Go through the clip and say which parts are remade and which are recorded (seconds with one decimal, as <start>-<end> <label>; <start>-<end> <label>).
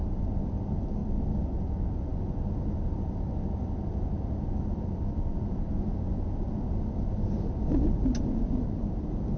0.0-9.4 recorded